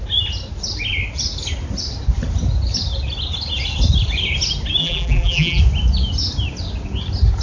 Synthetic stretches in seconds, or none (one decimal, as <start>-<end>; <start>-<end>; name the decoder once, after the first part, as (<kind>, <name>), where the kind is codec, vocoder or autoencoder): 4.8-5.6 (vocoder, BigVGAN v2)